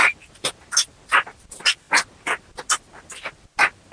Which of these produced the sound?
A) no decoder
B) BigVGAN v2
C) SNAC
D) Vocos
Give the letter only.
A